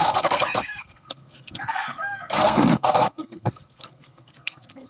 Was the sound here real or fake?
fake